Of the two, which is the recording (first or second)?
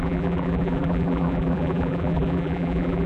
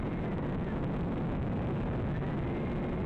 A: second